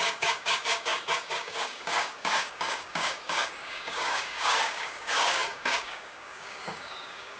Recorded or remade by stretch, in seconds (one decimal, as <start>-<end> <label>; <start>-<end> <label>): 0.0-7.4 remade